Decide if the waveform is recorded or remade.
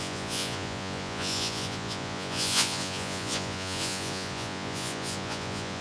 remade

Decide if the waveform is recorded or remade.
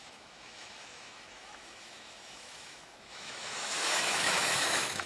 remade